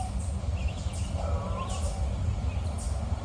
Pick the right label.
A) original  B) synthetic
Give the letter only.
A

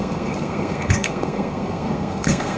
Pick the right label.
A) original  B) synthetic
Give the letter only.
B